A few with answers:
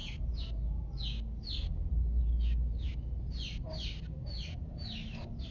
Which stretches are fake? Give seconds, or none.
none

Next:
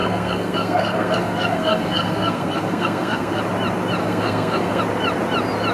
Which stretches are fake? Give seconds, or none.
0.0-3.4 (codec, SNAC); 4.0-4.8

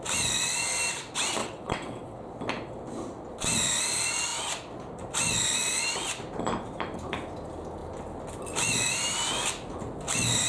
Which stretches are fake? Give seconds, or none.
1.4-2.2 (vocoder, WaveNeXt)